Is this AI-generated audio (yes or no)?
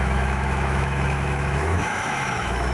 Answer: yes